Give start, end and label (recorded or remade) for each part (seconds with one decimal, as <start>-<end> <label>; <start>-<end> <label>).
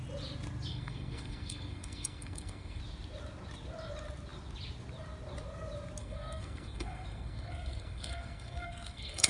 0.0-0.7 recorded; 0.7-2.8 remade; 2.8-6.0 recorded; 6.0-9.3 remade